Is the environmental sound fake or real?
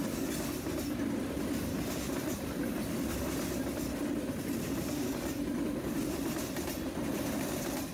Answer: real